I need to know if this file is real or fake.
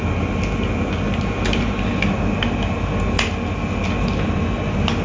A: real